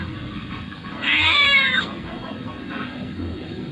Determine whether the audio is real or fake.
fake